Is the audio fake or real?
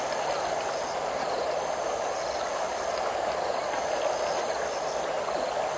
real